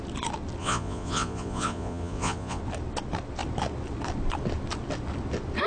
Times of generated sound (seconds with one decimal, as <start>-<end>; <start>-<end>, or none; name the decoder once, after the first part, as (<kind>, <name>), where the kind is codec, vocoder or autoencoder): 0.6-2.6 (vocoder, Vocos)